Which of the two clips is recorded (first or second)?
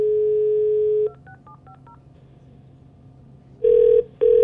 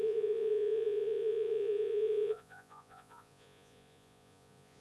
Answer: first